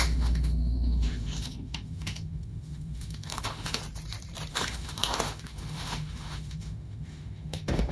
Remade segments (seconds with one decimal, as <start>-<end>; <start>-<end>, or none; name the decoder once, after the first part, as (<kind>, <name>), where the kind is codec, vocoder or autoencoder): 0.0-3.8 (autoencoder, DAC-VAE); 4.5-7.9